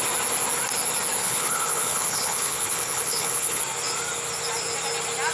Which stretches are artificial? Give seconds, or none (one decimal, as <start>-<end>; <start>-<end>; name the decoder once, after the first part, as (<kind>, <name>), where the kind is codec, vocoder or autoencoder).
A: 1.2-3.6 (codec, HILCodec)